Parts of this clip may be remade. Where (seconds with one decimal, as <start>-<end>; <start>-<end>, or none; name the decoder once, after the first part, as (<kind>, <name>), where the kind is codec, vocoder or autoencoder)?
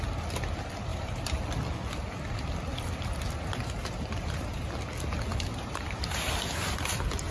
0.9-1.4 (vocoder, BigVGAN v2); 2.7-4.7; 5.3-6.3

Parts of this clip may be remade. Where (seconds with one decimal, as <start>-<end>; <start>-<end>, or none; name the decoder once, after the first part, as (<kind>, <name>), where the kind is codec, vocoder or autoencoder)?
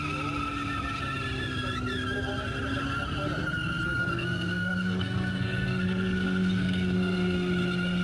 4.0-7.5 (codec, SNAC)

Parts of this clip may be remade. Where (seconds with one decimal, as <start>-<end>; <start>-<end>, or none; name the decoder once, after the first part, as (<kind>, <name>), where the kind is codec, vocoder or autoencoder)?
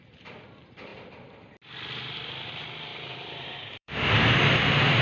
2.9-4.3 (vocoder, BigVGAN v2)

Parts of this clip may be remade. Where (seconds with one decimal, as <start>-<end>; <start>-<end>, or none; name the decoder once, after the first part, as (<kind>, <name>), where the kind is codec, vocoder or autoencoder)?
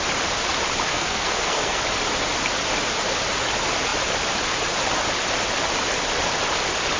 0.9-1.8 (codec, SNAC)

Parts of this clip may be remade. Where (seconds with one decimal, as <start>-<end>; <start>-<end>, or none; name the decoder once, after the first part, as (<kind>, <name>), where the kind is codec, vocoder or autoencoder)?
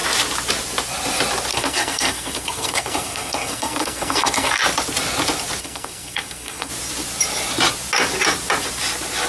1.5-4.6 (codec, SNAC); 5.6-6.7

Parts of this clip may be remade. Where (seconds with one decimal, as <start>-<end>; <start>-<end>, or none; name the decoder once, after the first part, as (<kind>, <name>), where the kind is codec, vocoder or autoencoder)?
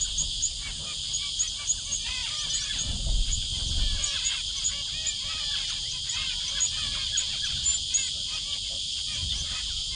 none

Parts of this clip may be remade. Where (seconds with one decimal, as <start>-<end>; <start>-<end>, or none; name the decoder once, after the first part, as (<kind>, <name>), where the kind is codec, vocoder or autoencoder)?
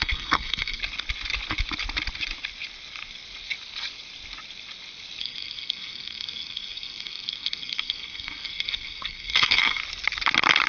0.0-0.8 (codec, SNAC); 5.2-9.8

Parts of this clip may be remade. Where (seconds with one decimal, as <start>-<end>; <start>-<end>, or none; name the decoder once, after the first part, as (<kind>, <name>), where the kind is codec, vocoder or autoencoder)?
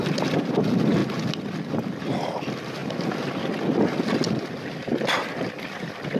none